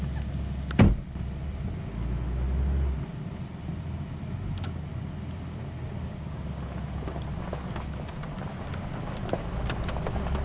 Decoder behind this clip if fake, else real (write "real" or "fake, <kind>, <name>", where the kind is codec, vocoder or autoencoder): real